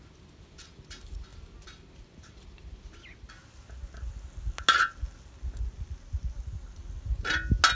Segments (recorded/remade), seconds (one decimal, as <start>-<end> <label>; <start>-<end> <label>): 0.0-7.7 recorded